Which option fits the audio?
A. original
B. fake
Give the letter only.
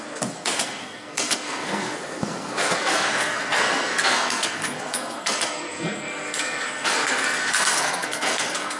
B